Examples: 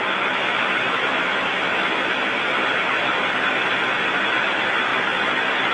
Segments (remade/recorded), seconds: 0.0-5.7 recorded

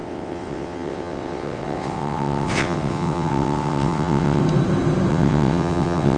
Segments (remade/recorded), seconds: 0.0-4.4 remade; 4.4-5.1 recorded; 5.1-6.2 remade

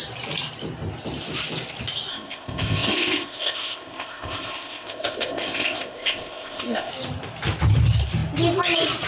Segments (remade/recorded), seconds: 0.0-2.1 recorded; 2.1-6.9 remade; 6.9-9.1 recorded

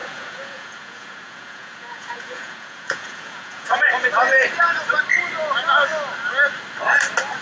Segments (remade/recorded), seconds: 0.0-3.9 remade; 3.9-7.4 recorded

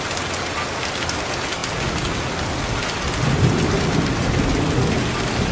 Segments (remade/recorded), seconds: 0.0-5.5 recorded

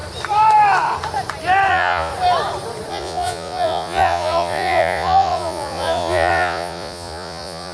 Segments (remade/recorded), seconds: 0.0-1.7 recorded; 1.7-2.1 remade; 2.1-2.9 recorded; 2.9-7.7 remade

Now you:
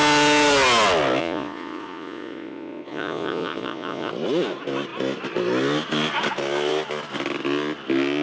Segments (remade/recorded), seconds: 0.0-1.2 recorded; 1.2-4.1 remade; 4.1-8.2 recorded